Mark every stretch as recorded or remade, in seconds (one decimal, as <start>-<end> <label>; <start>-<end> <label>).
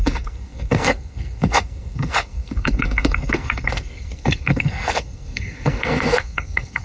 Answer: 0.0-6.8 remade